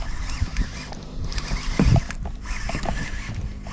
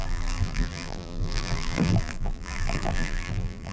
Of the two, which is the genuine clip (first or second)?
first